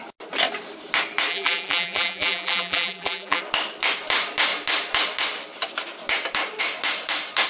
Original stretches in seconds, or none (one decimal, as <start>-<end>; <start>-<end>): 0.0-1.3; 3.4-7.5